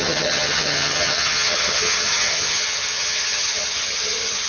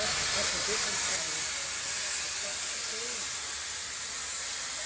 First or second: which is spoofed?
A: first